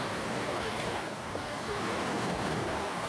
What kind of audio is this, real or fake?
fake